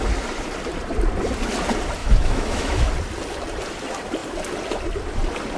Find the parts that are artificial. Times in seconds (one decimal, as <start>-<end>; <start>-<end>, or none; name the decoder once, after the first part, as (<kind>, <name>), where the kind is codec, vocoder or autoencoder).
2.0-2.9 (autoencoder, DAC-VAE)